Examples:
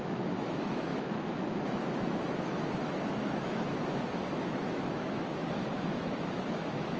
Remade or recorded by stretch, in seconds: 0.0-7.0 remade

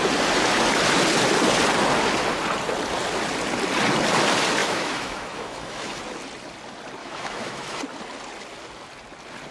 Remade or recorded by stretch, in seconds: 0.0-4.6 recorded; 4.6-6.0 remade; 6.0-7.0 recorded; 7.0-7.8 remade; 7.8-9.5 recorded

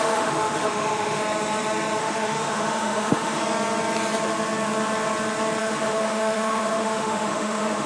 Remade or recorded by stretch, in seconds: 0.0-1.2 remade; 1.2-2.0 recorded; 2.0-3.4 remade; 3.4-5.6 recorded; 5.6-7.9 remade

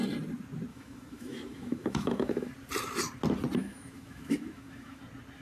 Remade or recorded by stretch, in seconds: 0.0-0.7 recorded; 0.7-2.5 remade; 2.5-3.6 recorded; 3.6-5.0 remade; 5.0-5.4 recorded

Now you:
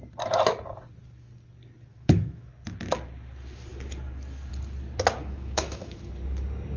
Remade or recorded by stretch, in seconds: 0.0-1.9 recorded; 1.9-2.5 remade; 2.5-5.2 recorded; 5.2-6.1 remade; 6.1-6.8 recorded

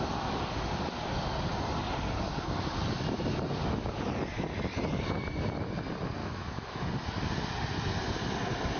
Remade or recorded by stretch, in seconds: 0.0-6.2 recorded; 6.2-6.9 remade; 6.9-8.8 recorded